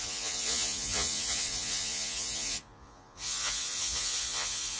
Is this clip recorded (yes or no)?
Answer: no